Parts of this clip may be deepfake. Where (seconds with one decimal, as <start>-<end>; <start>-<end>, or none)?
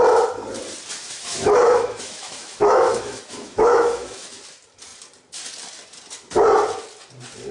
1.0-4.4